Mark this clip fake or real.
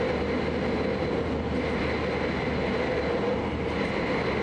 real